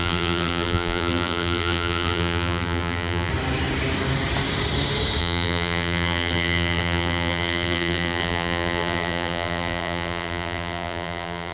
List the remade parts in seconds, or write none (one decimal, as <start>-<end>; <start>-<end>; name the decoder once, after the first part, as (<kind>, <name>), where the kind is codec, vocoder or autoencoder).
0.0-3.3 (vocoder, BigVGAN v2); 5.2-11.5